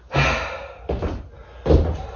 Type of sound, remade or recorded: recorded